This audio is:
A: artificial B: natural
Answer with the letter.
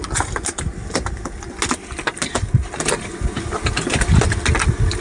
B